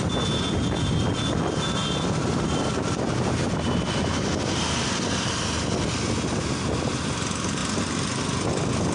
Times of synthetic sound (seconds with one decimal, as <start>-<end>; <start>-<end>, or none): none